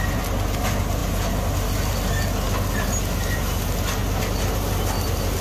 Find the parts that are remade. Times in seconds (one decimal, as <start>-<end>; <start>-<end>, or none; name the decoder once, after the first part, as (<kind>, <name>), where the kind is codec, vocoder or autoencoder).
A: none